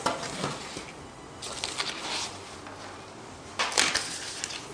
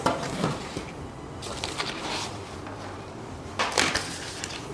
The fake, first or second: second